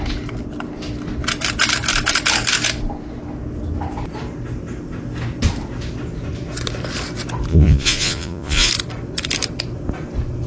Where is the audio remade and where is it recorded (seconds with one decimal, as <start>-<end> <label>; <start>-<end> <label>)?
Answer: 0.0-7.5 recorded; 7.5-8.7 remade; 8.7-10.5 recorded